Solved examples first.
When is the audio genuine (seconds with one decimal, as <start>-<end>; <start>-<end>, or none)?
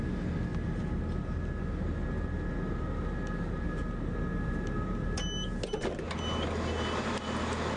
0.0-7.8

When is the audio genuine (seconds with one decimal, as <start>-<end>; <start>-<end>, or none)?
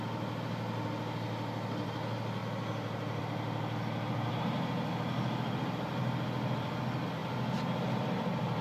0.0-8.6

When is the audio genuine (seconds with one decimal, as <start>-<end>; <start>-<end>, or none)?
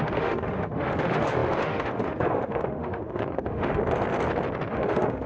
3.8-4.7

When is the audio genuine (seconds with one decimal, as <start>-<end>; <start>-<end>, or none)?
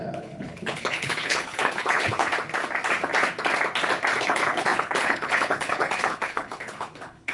2.3-4.2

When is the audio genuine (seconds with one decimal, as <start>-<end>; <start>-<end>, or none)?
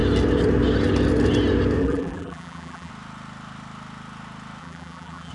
0.0-1.8; 2.9-4.6